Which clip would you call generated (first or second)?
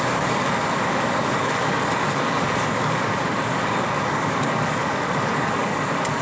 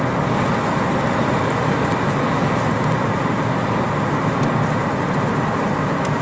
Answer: first